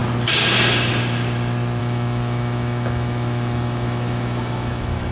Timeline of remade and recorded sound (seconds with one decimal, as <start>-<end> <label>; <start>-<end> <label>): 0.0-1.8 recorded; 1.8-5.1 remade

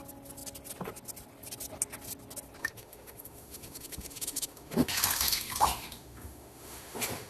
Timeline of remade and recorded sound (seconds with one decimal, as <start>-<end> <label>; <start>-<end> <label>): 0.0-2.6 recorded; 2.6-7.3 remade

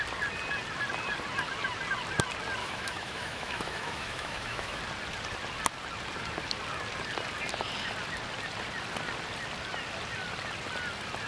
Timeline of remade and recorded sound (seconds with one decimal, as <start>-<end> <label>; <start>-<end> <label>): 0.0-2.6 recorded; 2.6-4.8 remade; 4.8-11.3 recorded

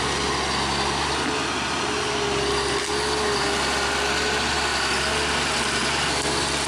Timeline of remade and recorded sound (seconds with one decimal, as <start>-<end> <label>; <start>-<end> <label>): 0.0-6.7 recorded

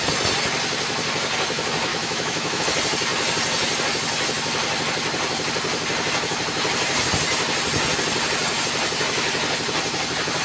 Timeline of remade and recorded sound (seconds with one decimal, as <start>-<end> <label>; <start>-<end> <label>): 0.0-1.9 recorded; 1.9-2.6 remade; 2.6-10.4 recorded

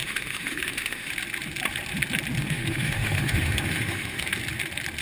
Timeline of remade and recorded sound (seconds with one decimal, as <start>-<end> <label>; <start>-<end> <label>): 0.0-1.1 remade; 1.1-2.4 recorded; 2.4-4.3 remade; 4.3-5.0 recorded

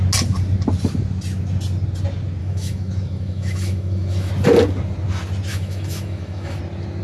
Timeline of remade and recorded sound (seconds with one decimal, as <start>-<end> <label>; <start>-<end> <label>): 0.0-2.4 recorded; 2.4-4.3 remade; 4.3-5.5 recorded; 5.5-6.6 remade; 6.6-7.0 recorded